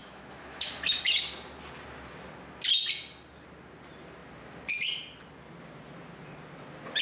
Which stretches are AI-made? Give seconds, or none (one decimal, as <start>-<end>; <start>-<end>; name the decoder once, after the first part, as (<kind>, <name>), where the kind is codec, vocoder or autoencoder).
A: 0.0-1.0 (autoencoder, DAC-VAE)